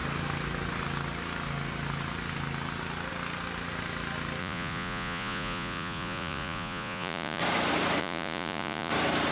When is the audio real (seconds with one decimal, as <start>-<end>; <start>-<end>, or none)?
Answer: 0.0-4.4; 7.4-8.0; 8.9-9.3